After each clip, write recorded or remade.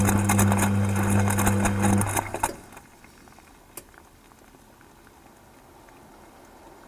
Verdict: recorded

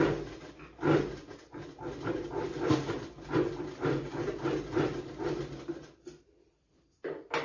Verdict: recorded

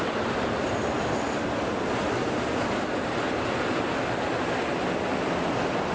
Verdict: recorded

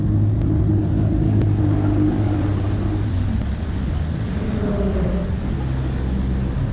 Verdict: recorded